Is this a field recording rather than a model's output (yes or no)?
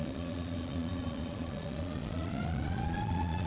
no